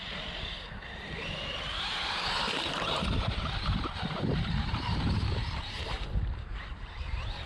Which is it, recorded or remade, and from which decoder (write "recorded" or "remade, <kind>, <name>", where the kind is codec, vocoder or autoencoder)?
remade, vocoder, BigVGAN v2